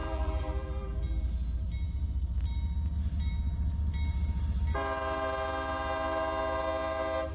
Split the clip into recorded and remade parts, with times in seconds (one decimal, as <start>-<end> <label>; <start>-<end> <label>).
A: 0.0-1.3 remade; 1.3-7.3 recorded